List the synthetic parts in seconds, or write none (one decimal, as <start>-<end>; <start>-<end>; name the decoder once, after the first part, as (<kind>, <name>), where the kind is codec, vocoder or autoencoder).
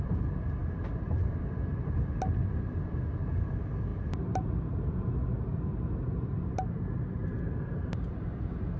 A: none